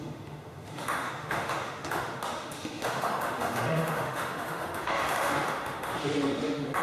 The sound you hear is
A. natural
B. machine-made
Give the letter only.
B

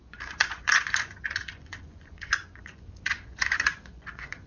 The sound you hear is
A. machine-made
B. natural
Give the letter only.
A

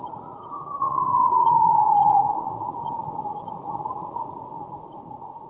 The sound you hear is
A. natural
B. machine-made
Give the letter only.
B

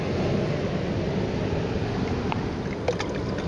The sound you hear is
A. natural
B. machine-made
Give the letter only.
A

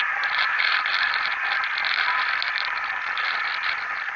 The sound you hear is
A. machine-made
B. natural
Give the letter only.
B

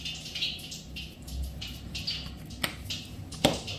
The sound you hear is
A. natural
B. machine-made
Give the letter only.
A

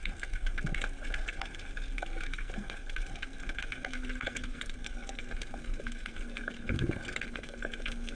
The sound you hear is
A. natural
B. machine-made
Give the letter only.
B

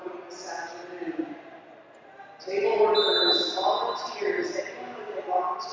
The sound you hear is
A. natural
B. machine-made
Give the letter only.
A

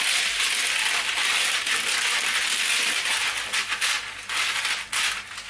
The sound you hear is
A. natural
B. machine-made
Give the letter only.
A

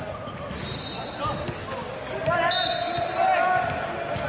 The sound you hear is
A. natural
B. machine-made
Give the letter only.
A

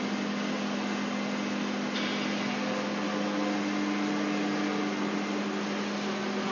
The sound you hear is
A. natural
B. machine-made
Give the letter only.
A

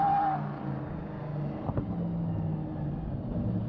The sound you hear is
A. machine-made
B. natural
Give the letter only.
B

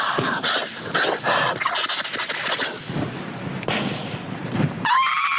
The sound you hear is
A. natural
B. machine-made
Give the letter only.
A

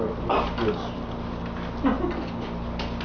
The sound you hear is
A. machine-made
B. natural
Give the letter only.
B